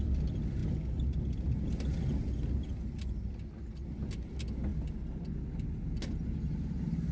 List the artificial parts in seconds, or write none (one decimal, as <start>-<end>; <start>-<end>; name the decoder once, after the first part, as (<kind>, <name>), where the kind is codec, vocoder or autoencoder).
none